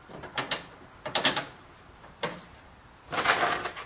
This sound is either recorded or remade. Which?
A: remade